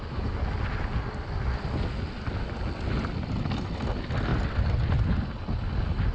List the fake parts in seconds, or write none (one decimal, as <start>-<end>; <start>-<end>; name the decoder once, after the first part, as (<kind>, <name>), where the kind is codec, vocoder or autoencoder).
none